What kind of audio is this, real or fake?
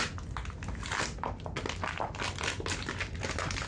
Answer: real